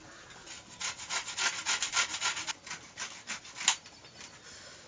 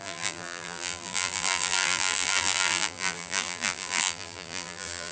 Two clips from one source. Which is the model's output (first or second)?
second